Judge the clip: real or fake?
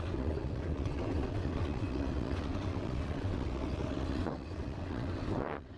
fake